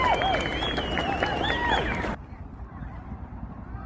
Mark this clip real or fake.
real